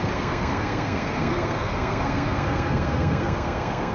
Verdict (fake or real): fake